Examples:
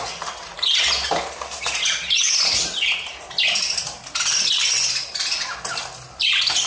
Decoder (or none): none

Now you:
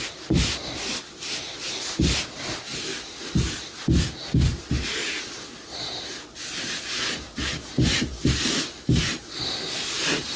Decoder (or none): none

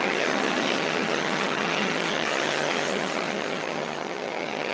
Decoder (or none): vocoder, HiFi-GAN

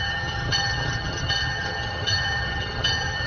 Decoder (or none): vocoder, HiFi-GAN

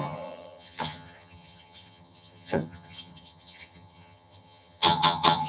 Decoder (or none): vocoder, HiFi-GAN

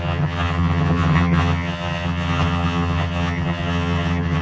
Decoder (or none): vocoder, HiFi-GAN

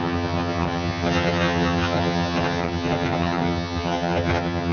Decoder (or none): vocoder, HiFi-GAN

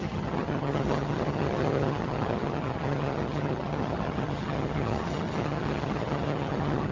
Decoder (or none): vocoder, HiFi-GAN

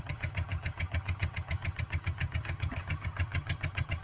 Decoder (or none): vocoder, HiFi-GAN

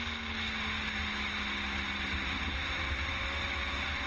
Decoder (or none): none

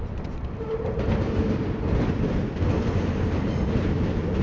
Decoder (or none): none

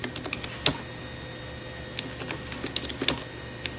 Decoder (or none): none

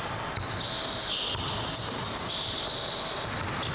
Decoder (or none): none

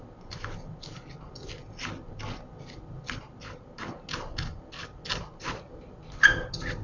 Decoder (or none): none